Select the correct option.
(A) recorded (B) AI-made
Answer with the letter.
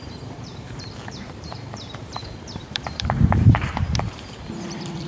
B